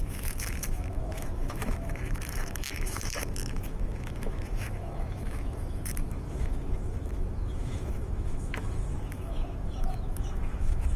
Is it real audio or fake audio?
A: fake